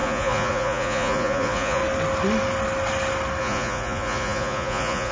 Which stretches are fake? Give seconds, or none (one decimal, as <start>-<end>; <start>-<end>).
0.0-1.8; 3.4-5.1